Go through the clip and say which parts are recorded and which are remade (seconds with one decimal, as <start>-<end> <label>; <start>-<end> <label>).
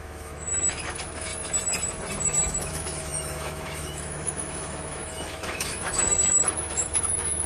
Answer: 0.0-1.3 remade; 1.3-2.2 recorded; 2.2-7.5 remade